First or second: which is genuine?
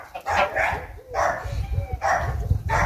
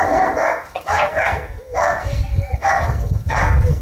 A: first